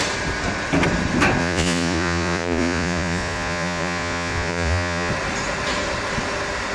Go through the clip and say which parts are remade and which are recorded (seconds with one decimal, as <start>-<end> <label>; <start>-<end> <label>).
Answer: 0.0-1.4 recorded; 1.4-5.1 remade; 5.1-6.7 recorded